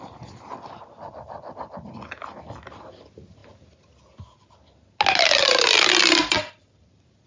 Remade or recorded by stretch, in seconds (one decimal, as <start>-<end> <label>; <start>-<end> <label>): 0.0-7.3 recorded